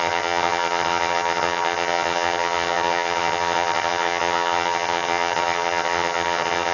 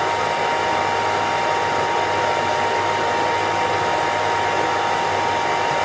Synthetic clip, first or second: first